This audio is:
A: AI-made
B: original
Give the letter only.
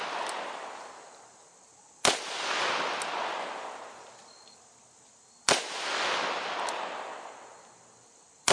B